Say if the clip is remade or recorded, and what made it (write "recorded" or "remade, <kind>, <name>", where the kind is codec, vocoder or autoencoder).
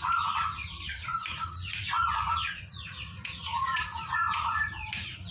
remade, vocoder, Vocos